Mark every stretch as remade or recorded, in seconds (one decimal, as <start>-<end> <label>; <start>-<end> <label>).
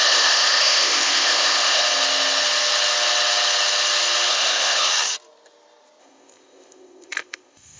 0.0-1.8 remade; 1.8-4.3 recorded; 4.3-4.9 remade; 4.9-6.0 recorded; 6.0-7.8 remade